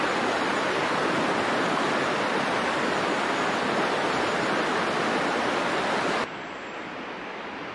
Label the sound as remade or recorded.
recorded